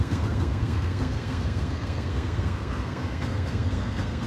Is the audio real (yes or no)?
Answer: no